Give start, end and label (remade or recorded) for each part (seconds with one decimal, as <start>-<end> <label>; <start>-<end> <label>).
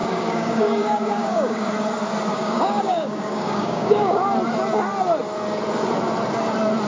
0.0-1.7 remade; 1.7-2.3 recorded; 2.3-4.2 remade; 4.2-6.9 recorded